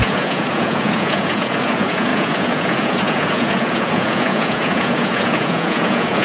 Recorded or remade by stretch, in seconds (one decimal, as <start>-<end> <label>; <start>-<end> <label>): 0.0-6.2 remade